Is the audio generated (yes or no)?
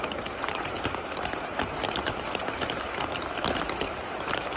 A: no